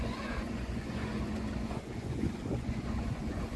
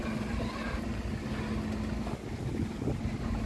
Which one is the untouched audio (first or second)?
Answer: second